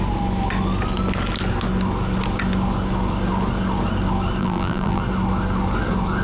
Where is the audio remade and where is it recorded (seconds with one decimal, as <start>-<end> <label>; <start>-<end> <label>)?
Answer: 0.0-4.4 recorded; 4.4-5.0 remade; 5.0-6.2 recorded